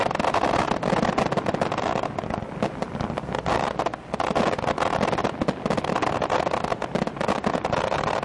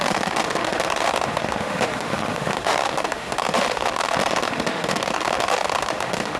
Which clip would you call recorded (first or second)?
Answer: first